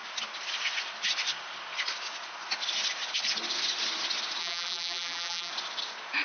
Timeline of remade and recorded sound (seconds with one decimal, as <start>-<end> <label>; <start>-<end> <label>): 0.0-4.4 recorded; 4.4-5.5 remade; 5.5-6.2 recorded